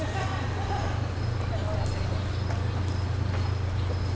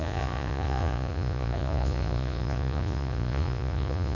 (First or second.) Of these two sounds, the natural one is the first